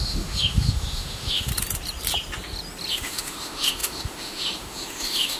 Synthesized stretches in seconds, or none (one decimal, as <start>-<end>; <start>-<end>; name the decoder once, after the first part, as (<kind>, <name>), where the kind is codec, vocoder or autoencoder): 0.0-1.5 (autoencoder, DAC-VAE); 2.9-5.4